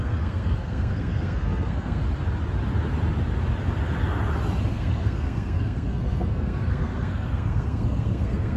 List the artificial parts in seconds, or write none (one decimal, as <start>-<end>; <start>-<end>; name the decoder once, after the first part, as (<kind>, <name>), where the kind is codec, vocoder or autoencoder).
0.0-2.0 (codec, SNAC); 4.7-8.6

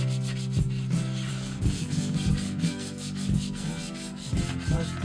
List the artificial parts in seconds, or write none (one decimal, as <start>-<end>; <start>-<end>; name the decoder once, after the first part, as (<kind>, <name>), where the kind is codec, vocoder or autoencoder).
1.3-4.3 (codec, SNAC)

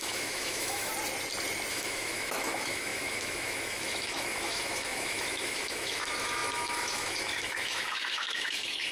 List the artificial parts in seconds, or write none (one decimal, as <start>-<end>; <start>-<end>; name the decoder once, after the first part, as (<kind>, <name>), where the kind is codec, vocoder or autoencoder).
0.0-0.9 (autoencoder, DAC-VAE); 1.7-8.9

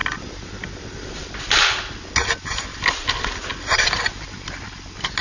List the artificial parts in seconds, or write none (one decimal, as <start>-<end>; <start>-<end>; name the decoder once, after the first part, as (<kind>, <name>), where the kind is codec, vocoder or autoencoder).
none